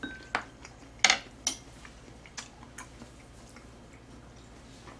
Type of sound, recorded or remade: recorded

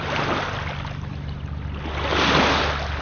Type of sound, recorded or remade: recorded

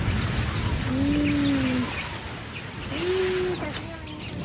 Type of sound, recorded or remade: recorded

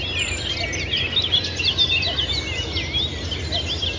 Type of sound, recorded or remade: recorded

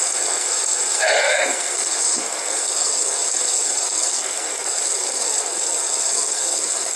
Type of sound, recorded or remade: remade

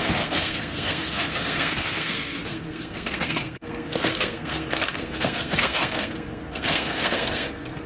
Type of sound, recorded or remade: remade